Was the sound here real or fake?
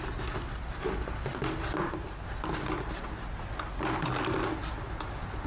real